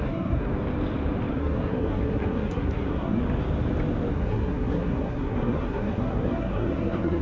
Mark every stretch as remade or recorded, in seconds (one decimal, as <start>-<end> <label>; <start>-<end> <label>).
0.0-0.5 remade; 0.5-1.3 recorded; 1.3-3.2 remade; 3.2-4.1 recorded; 4.1-7.2 remade